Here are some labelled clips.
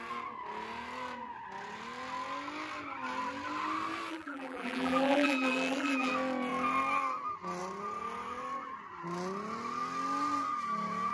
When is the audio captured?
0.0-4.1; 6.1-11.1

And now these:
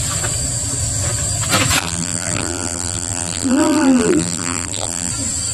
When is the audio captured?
0.0-1.8; 5.1-5.5